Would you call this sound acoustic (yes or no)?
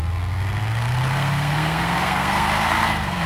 no